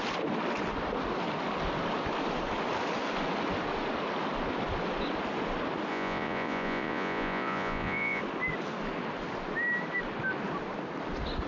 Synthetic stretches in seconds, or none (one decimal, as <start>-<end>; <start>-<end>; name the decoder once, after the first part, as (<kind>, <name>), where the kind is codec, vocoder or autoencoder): 5.9-8.2 (vocoder, Vocos)